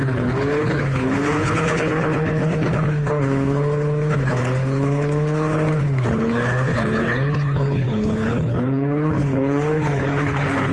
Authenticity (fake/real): fake